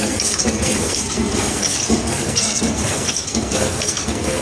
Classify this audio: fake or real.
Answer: fake